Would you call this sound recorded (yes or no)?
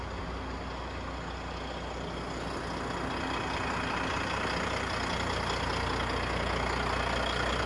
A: yes